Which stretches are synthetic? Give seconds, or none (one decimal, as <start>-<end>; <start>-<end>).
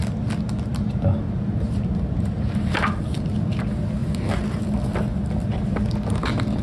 0.7-2.8; 4.0-4.6